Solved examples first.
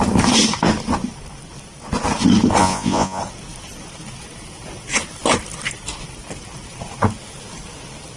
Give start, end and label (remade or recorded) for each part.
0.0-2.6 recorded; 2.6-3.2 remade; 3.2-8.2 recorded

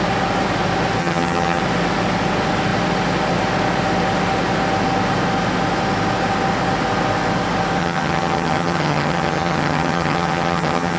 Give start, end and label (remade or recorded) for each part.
0.0-1.0 recorded; 1.0-1.6 remade; 1.6-7.8 recorded; 7.8-11.0 remade

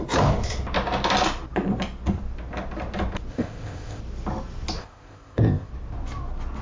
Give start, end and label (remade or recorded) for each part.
0.0-3.3 recorded; 3.3-4.0 remade; 4.0-4.8 recorded; 4.8-5.7 remade; 5.7-6.6 recorded

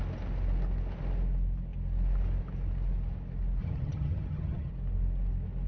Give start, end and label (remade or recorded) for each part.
0.0-3.6 recorded; 3.6-4.7 remade; 4.7-5.7 recorded

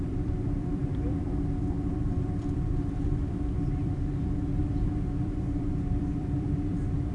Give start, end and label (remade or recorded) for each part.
0.0-4.6 remade; 4.6-5.1 recorded; 5.1-7.1 remade

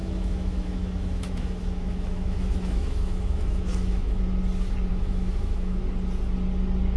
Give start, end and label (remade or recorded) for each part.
0.0-4.2 remade; 4.2-4.9 recorded; 4.9-5.8 remade; 5.8-7.0 recorded

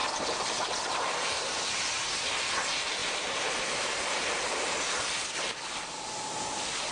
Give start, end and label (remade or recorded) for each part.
0.0-0.6 remade; 0.6-3.0 recorded; 3.0-5.4 remade; 5.4-6.9 recorded